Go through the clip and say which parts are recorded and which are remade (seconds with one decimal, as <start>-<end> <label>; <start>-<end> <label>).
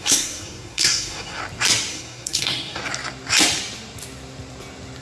0.0-1.4 remade; 1.4-1.9 recorded; 1.9-2.8 remade; 2.8-5.0 recorded